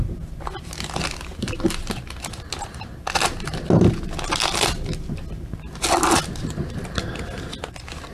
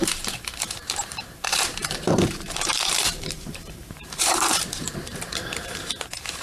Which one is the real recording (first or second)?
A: first